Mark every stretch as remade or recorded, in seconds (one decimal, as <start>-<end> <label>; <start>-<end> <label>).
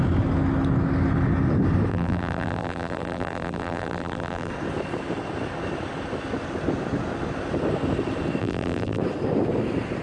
0.0-1.9 recorded; 1.9-4.5 remade; 4.5-8.4 recorded; 8.4-9.0 remade; 9.0-10.0 recorded